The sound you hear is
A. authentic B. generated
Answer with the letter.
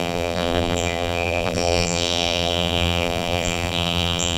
B